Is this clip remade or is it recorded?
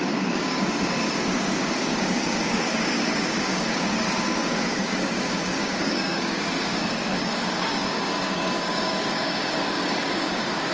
remade